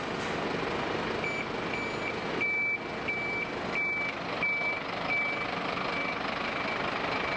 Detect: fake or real real